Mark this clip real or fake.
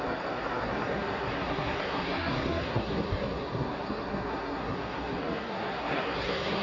fake